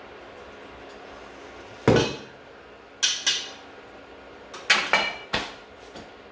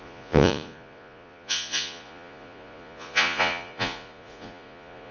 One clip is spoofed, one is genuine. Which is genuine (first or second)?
first